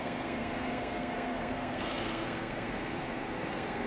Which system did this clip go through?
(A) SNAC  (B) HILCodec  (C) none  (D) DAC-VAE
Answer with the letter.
A